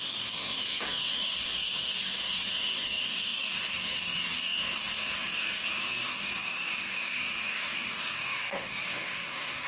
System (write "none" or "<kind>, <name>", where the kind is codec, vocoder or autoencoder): codec, DAC